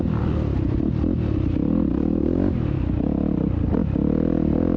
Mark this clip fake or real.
real